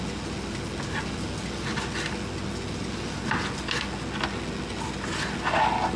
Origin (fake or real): real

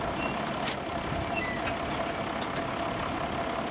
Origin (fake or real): real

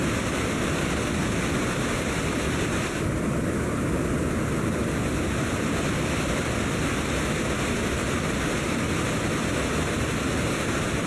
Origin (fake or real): real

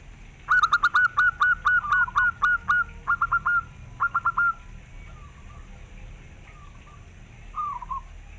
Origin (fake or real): real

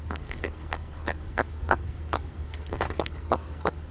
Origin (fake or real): fake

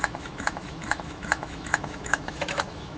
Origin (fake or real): fake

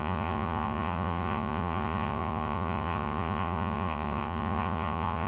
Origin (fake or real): fake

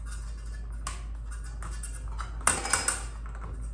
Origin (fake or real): real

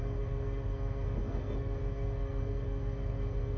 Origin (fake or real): fake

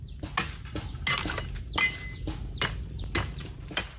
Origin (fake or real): real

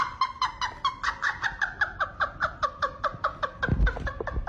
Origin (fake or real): real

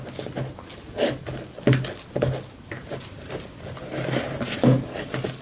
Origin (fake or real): real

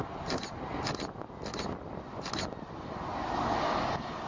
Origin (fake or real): real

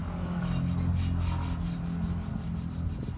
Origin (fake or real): real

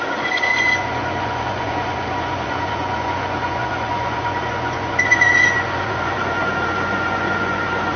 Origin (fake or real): fake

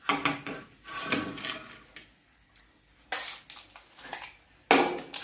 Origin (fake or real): real